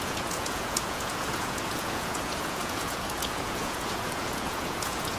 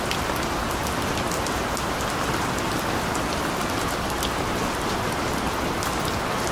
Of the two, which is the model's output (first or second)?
first